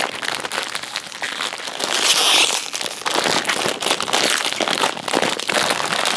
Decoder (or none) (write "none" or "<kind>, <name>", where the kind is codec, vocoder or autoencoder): none